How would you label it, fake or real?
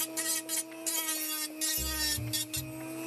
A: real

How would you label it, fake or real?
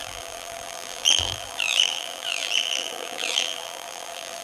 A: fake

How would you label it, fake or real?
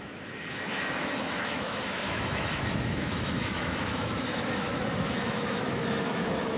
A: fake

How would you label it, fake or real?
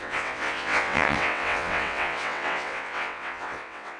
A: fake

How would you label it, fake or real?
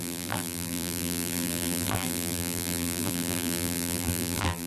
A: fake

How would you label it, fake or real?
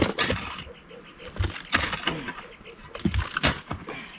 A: real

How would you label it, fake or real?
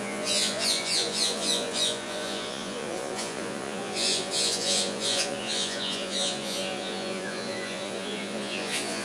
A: fake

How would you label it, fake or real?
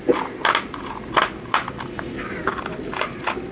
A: real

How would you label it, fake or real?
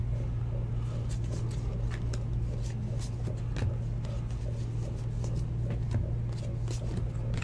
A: real